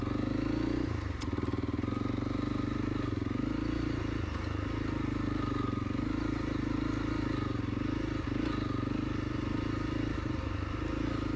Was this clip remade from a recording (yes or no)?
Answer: no